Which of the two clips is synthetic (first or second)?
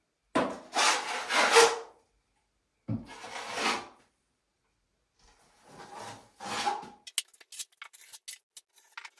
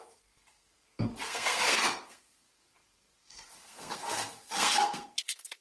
second